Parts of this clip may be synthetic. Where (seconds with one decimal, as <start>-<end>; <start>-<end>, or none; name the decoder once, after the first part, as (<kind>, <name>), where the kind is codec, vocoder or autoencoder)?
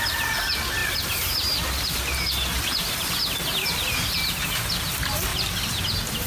none